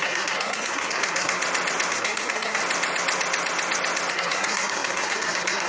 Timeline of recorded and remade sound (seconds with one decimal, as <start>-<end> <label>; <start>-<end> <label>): 0.0-1.4 remade; 1.4-1.9 recorded; 1.9-2.6 remade; 2.6-4.1 recorded; 4.1-5.7 remade